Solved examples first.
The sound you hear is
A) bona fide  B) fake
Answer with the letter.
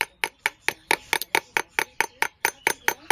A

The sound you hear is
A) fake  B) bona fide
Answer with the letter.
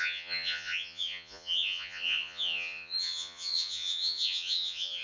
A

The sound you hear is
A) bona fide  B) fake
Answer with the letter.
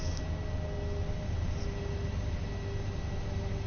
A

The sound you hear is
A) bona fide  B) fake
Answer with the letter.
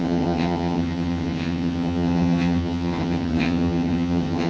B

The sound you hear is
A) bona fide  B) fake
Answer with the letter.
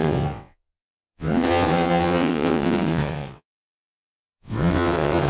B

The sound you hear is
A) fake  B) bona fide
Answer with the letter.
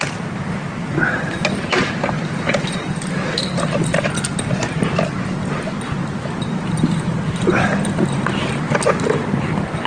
B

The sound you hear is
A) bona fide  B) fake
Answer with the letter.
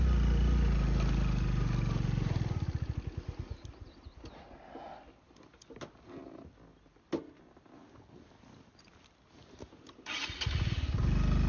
A